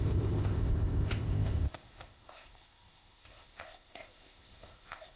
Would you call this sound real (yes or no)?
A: no